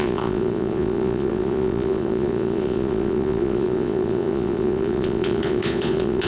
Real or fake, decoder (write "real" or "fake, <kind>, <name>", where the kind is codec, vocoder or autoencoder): fake, vocoder, Vocos